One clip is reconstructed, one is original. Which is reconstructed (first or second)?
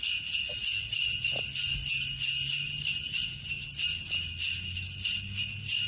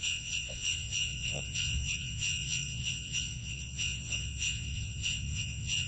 second